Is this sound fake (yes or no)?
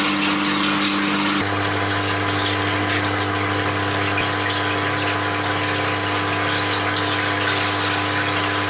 no